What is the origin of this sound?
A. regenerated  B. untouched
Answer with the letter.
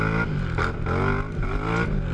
B